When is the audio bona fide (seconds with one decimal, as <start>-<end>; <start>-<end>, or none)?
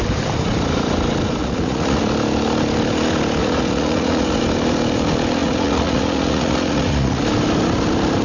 0.0-1.4; 2.0-3.4; 4.4-5.4; 7.2-8.2